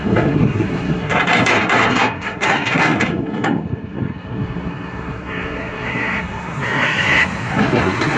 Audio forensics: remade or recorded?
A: remade